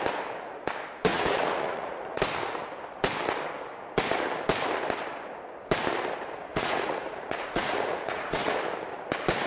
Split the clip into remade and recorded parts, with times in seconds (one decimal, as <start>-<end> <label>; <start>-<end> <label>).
0.0-1.1 recorded; 1.1-2.2 remade; 2.2-6.5 recorded; 6.5-8.6 remade; 8.6-9.5 recorded